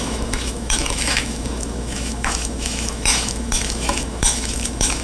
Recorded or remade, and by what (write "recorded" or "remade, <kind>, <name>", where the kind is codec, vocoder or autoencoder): remade, autoencoder, DAC-VAE